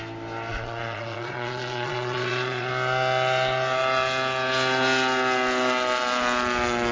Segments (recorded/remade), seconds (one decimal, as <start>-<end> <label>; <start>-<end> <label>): 0.0-0.5 recorded; 0.5-2.7 remade; 2.7-6.9 recorded